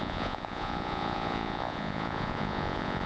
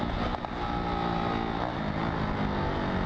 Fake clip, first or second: first